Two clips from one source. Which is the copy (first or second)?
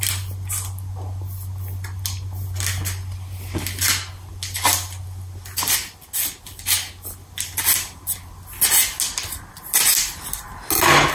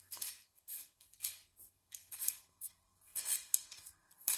second